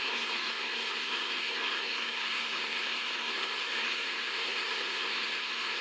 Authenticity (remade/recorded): remade